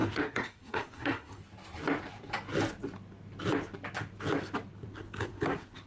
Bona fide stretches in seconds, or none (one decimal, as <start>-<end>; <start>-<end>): 1.4-4.9